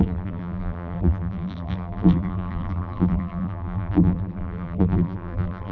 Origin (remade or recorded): remade